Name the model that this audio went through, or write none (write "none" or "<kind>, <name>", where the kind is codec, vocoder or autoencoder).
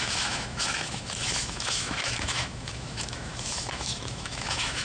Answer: autoencoder, DAC-VAE